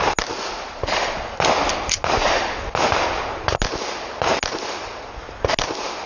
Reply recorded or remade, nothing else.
recorded